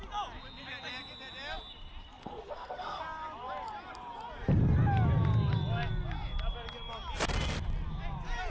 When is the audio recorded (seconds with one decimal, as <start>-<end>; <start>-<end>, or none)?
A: 0.0-2.2; 3.0-8.5